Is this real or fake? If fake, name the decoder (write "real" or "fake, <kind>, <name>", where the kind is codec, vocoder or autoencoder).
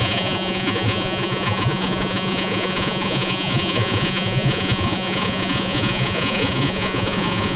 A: fake, vocoder, Vocos